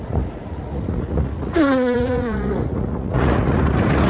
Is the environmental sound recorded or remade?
remade